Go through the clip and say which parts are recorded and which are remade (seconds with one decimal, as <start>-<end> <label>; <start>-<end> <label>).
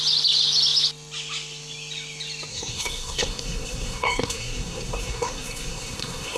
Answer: 0.0-2.5 recorded; 2.5-6.4 remade